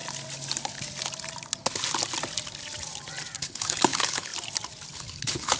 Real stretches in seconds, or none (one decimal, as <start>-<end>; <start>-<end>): 0.0-3.4; 4.3-4.9